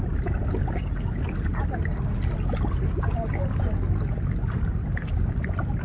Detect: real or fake real